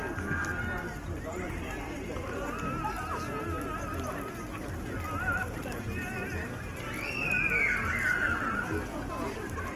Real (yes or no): yes